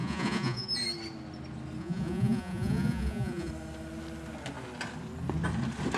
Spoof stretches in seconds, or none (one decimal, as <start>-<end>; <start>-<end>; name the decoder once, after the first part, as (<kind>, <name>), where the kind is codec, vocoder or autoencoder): 0.0-0.7 (vocoder, Vocos); 1.8-3.5